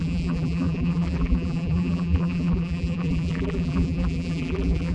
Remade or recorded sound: remade